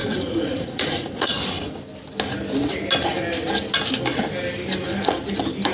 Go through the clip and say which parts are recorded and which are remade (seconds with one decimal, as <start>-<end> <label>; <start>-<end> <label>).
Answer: 0.0-1.8 remade; 1.8-5.7 recorded

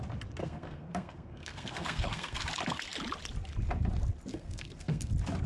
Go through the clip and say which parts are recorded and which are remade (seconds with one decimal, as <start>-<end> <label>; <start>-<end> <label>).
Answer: 0.0-0.4 recorded; 0.4-2.5 remade; 2.5-4.3 recorded; 4.3-5.1 remade; 5.1-5.5 recorded

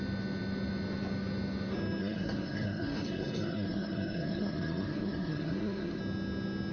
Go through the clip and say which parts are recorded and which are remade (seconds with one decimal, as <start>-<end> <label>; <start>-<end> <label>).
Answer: 0.0-2.0 recorded; 2.0-6.0 remade; 6.0-6.7 recorded

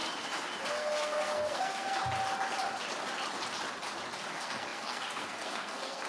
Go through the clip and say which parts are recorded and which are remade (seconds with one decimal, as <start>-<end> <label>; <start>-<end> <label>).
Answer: 0.0-0.7 recorded; 0.7-2.0 remade; 2.0-4.3 recorded; 4.3-6.1 remade

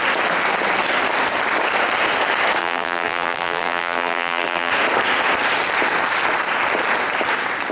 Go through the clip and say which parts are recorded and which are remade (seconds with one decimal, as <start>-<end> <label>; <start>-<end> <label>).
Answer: 0.0-2.6 recorded; 2.6-4.7 remade; 4.7-7.7 recorded

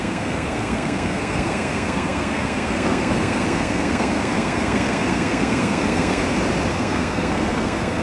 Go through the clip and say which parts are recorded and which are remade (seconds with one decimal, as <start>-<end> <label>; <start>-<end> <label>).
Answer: 0.0-6.2 remade; 6.2-6.7 recorded; 6.7-8.0 remade

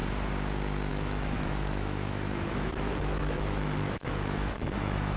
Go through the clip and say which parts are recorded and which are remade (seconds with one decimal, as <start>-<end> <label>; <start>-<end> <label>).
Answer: 0.0-0.9 recorded; 0.9-5.2 remade